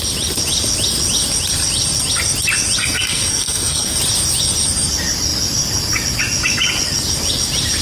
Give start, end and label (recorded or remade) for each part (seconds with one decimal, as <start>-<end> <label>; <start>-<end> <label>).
0.0-2.8 recorded; 2.8-4.0 remade; 4.0-7.8 recorded